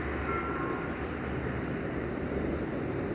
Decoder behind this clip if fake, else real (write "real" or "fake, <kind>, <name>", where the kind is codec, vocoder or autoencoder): real